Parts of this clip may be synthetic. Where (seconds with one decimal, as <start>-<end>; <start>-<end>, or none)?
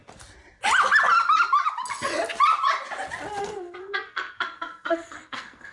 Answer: 3.4-5.7